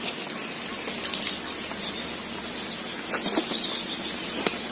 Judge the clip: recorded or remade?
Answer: recorded